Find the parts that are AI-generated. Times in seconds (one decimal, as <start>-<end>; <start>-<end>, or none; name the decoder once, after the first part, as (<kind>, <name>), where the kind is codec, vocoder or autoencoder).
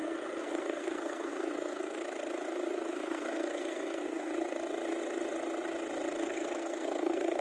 0.0-2.0 (codec, SNAC); 2.9-4.3; 6.2-7.4